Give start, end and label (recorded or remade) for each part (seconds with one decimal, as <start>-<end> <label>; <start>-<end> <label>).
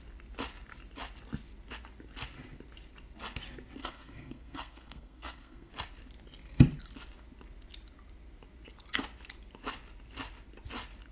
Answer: 0.0-3.8 recorded; 3.8-5.7 remade; 5.7-11.1 recorded